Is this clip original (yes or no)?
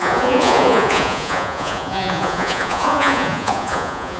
no